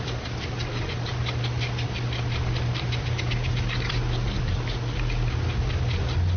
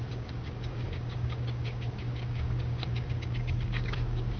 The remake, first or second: second